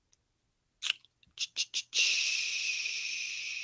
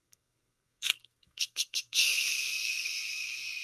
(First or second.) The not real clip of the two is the second